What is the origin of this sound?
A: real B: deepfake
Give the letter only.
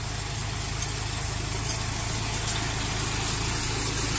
A